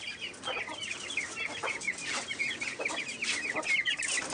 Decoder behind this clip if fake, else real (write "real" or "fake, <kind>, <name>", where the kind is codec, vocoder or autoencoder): real